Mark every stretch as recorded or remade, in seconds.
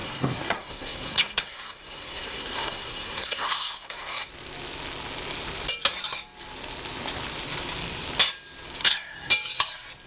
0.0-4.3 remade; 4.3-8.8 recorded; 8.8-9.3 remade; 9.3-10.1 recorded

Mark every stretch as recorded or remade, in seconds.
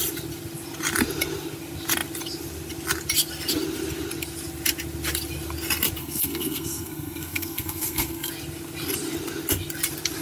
0.0-6.0 recorded; 6.0-8.3 remade; 8.3-10.2 recorded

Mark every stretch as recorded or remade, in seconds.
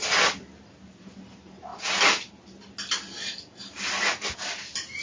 0.0-5.0 recorded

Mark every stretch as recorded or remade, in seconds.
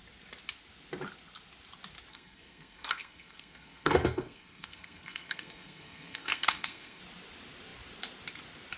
0.0-2.1 recorded; 2.1-7.0 remade; 7.0-8.8 recorded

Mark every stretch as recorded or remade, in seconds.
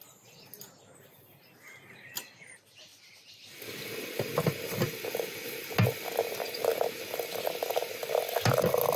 0.0-9.0 recorded